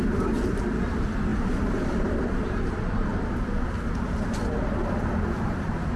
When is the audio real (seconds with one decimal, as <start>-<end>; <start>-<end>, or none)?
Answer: 0.0-1.3; 2.2-6.0